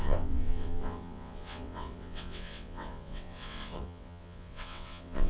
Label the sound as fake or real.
fake